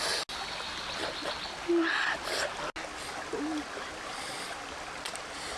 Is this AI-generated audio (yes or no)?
no